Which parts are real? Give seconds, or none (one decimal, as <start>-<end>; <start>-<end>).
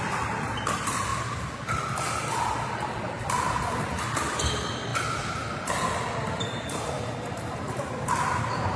0.0-8.8